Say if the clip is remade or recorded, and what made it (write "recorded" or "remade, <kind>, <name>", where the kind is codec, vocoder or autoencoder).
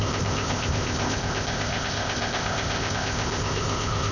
remade, codec, ZipCodec